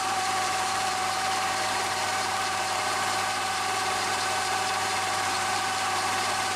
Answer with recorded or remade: remade